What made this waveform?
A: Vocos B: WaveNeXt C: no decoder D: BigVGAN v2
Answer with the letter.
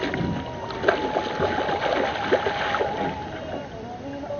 C